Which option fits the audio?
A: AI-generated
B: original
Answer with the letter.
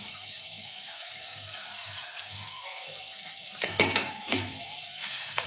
A